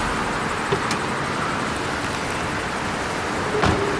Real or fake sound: real